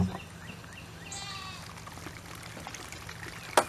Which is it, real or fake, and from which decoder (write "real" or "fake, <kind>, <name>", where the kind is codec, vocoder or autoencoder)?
real